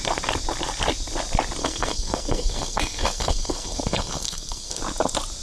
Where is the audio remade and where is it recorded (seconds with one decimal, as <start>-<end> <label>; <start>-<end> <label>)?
0.0-1.6 recorded; 1.6-4.8 remade; 4.8-5.4 recorded